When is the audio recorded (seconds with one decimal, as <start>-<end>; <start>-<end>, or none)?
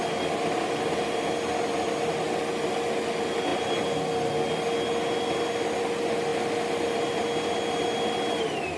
0.0-8.8